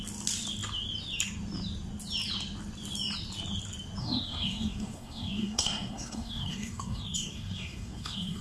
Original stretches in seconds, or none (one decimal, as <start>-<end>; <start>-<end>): 0.0-4.0